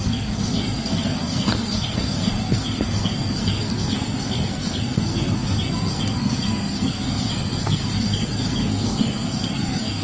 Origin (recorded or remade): remade